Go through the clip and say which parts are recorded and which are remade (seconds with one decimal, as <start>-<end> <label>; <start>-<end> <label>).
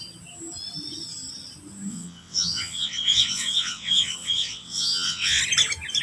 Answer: 0.0-1.9 recorded; 1.9-5.4 remade; 5.4-6.0 recorded